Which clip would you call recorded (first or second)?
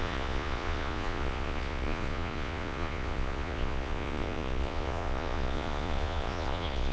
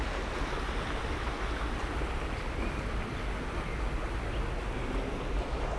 second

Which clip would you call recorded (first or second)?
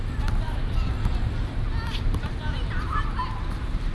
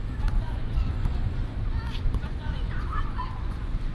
first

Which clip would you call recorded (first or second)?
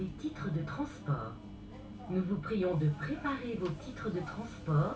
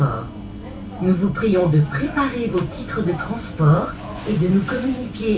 first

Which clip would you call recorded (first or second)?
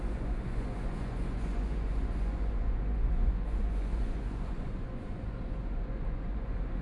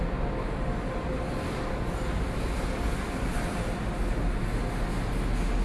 second